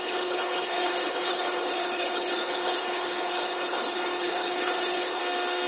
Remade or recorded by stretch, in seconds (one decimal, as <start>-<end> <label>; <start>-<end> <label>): 0.0-5.2 remade; 5.2-5.7 recorded